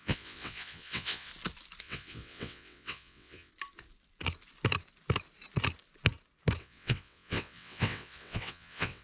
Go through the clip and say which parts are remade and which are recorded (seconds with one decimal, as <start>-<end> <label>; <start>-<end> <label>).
0.0-1.3 remade; 1.3-1.8 recorded; 1.8-3.5 remade; 3.5-6.6 recorded; 6.6-9.0 remade